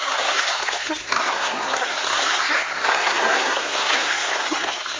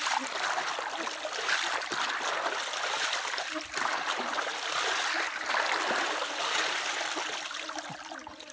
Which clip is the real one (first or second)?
second